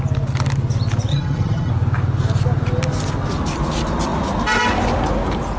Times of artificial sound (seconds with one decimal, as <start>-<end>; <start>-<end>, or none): 1.1-1.7